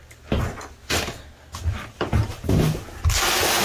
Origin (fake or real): real